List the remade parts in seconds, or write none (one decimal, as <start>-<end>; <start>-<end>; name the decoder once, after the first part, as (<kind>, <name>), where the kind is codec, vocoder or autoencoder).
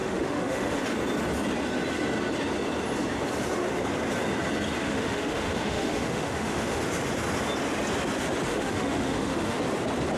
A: 0.0-0.8 (autoencoder, DAC-VAE); 4.8-6.8; 8.5-9.6